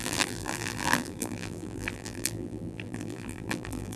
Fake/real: fake